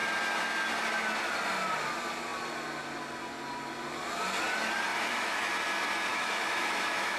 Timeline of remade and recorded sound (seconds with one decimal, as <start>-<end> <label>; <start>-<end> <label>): 0.0-4.9 recorded; 4.9-5.5 remade; 5.5-6.1 recorded; 6.1-7.2 remade